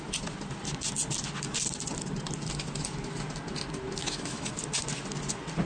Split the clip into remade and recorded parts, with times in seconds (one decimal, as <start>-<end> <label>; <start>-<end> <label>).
0.0-4.0 recorded; 4.0-4.5 remade; 4.5-5.7 recorded